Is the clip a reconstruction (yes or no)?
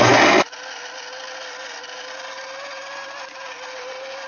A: no